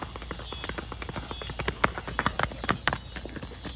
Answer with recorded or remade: recorded